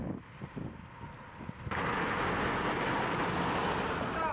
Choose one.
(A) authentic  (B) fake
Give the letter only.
A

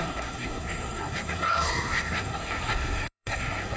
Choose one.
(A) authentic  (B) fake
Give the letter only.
B